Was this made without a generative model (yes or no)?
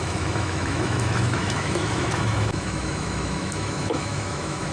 no